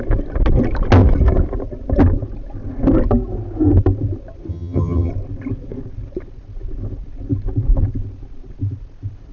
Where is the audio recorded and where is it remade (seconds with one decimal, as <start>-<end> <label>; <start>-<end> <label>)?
0.0-4.5 recorded; 4.5-5.1 remade; 5.1-9.3 recorded